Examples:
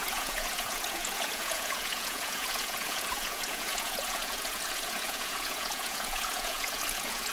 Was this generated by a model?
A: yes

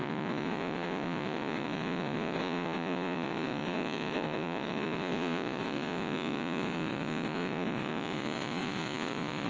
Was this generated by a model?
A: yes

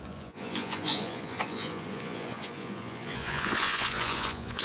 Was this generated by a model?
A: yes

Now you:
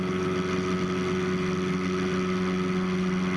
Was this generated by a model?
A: no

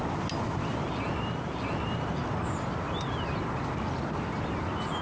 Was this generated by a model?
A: no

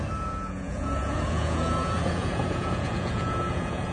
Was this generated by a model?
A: yes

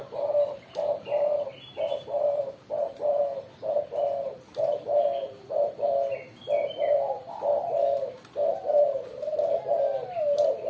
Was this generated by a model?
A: no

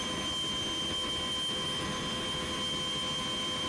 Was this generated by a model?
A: no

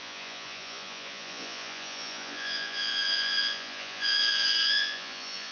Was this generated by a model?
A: yes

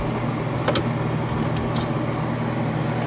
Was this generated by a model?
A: no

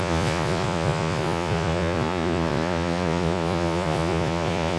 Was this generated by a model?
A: yes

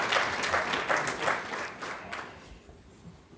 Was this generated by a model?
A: no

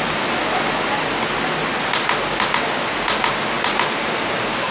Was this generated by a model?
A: no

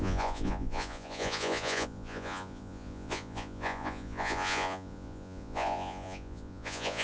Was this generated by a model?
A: yes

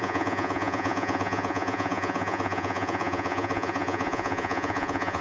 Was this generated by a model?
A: yes